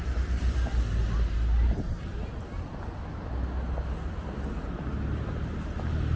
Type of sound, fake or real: real